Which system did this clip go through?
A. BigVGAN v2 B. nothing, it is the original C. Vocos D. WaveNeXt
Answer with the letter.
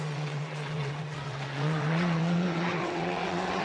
D